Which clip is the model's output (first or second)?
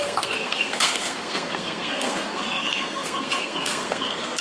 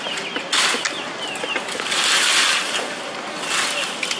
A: first